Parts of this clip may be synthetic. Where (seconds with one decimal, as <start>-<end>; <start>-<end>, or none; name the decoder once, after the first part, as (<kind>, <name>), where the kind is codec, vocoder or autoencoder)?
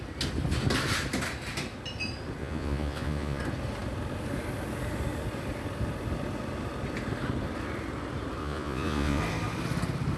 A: 2.4-3.4 (vocoder, Vocos); 8.4-9.2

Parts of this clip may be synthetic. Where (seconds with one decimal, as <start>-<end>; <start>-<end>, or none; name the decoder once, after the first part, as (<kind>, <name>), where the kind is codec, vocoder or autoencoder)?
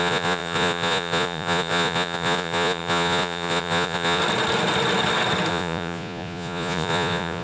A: 0.0-4.2 (vocoder, Vocos); 5.5-7.4